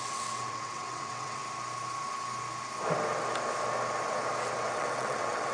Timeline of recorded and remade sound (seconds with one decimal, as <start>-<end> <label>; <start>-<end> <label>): 0.0-1.4 remade; 1.4-4.7 recorded; 4.7-5.5 remade